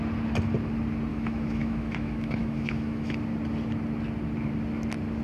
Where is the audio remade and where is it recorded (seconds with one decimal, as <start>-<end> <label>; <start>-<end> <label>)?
0.0-1.1 recorded; 1.1-3.2 remade; 3.2-5.2 recorded